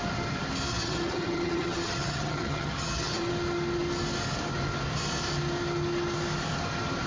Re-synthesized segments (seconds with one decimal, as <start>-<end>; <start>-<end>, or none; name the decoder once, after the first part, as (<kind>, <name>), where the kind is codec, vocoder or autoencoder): 0.7-3.3 (vocoder, HiFi-GAN)